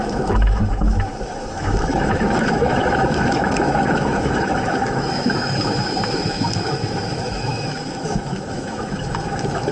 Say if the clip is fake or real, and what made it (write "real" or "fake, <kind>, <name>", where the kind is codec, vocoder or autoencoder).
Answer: fake, autoencoder, DAC-VAE